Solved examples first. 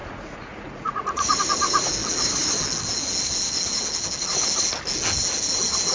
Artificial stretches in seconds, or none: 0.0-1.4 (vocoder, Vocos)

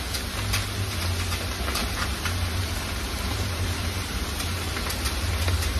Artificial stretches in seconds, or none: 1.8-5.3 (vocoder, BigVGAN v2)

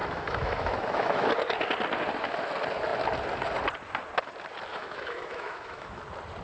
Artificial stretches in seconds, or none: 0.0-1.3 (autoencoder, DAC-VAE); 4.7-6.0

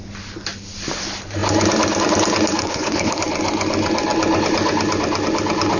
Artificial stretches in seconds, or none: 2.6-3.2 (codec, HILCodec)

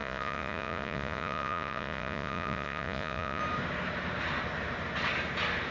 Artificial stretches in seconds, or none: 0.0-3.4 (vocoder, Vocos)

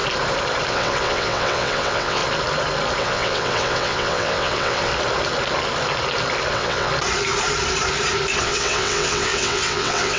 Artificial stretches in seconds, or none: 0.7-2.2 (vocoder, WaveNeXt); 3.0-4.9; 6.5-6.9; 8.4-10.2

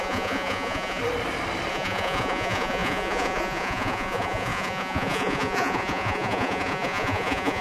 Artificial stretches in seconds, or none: 0.0-1.0 (vocoder, Vocos); 1.7-7.6